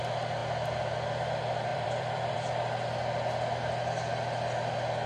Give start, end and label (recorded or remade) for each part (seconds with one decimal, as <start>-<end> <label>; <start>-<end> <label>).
0.0-1.7 recorded; 1.7-2.5 remade; 2.5-5.1 recorded